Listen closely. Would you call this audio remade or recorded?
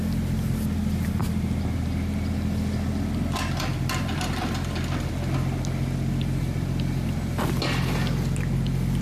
recorded